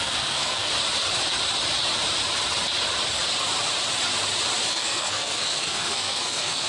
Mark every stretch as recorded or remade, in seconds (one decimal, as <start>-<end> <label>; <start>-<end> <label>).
0.0-0.7 remade; 0.7-4.7 recorded; 4.7-6.7 remade